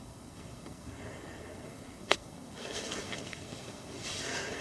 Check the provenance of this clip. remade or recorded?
remade